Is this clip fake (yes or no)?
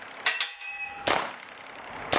yes